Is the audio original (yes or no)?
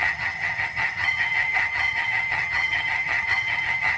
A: no